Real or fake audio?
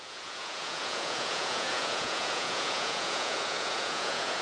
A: fake